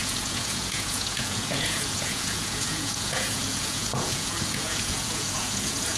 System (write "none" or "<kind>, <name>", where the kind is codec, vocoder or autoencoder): vocoder, Vocos